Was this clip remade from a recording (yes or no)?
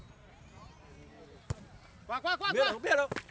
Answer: no